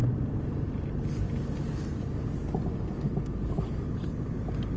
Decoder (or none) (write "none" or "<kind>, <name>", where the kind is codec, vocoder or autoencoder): none